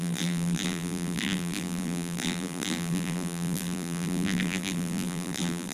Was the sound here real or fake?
fake